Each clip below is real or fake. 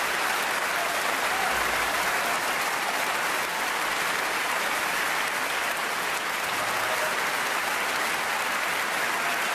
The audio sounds real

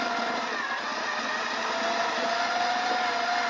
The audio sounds real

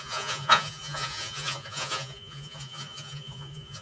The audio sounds fake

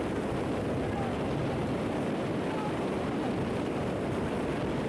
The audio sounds fake